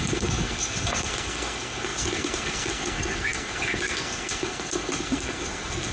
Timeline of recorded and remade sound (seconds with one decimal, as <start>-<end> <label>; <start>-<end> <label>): 0.0-5.9 remade